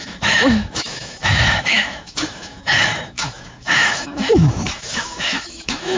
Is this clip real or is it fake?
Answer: fake